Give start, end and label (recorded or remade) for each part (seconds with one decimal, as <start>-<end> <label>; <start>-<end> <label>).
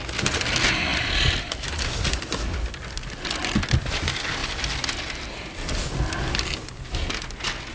0.0-7.7 recorded